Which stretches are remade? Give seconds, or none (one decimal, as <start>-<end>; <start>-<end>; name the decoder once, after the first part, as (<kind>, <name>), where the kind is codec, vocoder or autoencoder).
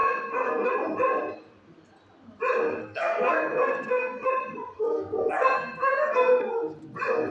0.0-0.7 (codec, SNAC); 2.8-4.3; 4.7-6.5